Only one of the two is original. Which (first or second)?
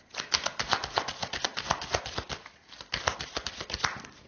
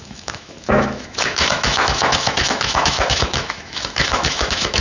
first